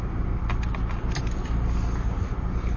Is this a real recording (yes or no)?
yes